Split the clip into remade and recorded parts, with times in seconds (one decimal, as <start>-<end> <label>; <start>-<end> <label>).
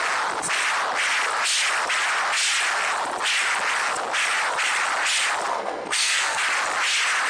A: 0.0-5.5 recorded; 5.5-6.4 remade; 6.4-7.3 recorded